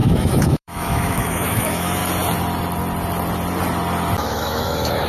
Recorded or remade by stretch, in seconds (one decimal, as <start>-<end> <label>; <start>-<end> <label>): 0.0-2.0 remade; 2.0-4.2 recorded; 4.2-5.1 remade